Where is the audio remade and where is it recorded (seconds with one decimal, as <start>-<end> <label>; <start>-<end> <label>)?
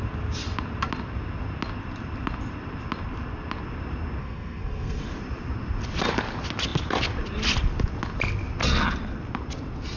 0.0-4.2 recorded; 4.2-5.0 remade; 5.0-10.0 recorded